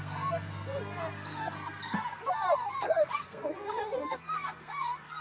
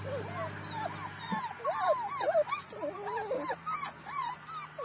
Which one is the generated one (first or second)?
first